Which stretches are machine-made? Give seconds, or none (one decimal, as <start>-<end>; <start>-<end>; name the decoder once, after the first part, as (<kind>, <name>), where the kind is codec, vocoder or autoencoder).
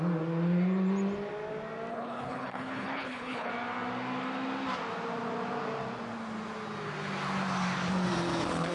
1.9-3.5 (codec, HILCodec)